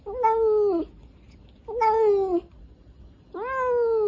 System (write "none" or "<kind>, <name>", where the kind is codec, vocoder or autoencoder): none